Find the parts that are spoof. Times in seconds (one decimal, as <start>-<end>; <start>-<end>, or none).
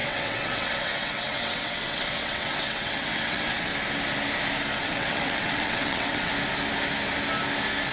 0.0-3.7; 4.8-6.3